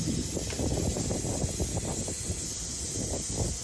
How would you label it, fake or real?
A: real